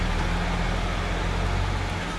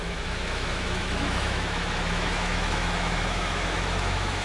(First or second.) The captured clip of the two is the first